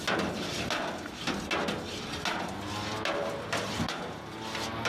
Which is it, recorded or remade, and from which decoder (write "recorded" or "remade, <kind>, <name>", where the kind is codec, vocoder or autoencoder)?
recorded